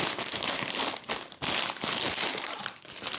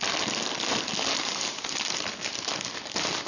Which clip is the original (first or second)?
second